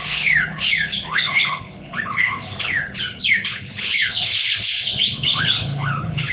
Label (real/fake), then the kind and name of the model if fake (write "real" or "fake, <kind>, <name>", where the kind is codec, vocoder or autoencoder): fake, codec, HILCodec